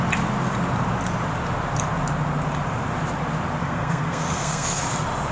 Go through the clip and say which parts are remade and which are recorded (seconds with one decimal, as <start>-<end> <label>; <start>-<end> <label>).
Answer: 0.0-3.6 recorded; 3.6-4.8 remade; 4.8-5.3 recorded